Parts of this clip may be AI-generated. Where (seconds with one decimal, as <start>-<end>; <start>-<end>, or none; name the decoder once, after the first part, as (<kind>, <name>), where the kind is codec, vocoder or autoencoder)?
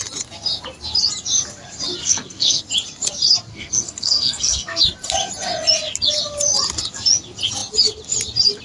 2.0-2.6 (codec, SNAC); 3.5-4.8